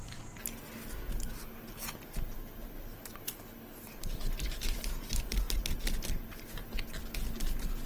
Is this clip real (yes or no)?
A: yes